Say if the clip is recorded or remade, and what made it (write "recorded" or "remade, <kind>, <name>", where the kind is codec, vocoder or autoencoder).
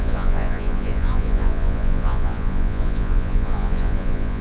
remade, vocoder, Vocos